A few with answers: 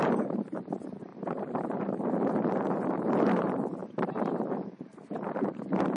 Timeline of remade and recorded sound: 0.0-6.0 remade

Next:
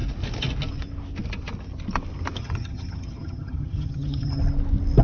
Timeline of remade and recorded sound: 0.0-2.4 recorded; 2.4-4.4 remade; 4.4-5.0 recorded

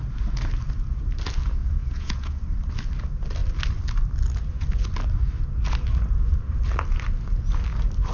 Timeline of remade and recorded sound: 0.0-1.6 recorded; 1.6-2.4 remade; 2.4-8.1 recorded

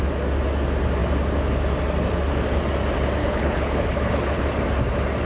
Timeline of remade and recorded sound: 0.0-3.2 recorded; 3.2-4.4 remade; 4.4-5.2 recorded

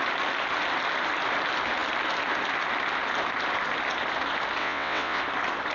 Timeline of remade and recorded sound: 0.0-4.6 recorded; 4.6-5.2 remade; 5.2-5.7 recorded

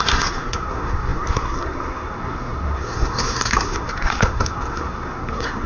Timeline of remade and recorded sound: 0.0-5.7 remade